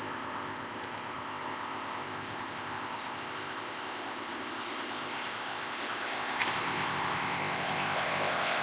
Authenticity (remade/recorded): remade